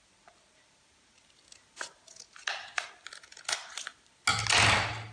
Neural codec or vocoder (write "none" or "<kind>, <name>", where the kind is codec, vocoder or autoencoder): none